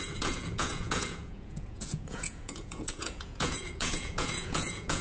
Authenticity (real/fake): fake